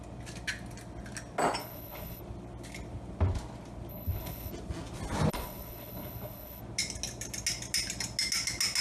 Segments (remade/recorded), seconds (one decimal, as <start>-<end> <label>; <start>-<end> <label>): 0.0-1.6 recorded; 1.6-2.2 remade; 2.2-3.9 recorded; 3.9-4.5 remade; 4.5-5.3 recorded; 5.3-6.6 remade; 6.6-8.8 recorded